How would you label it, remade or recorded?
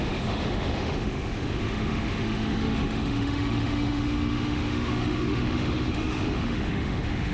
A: remade